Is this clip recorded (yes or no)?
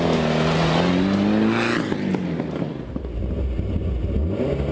yes